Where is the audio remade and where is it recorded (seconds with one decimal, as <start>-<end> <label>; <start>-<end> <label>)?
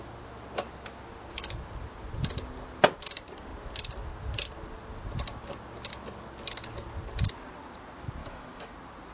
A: 0.0-8.2 recorded; 8.2-8.7 remade; 8.7-9.1 recorded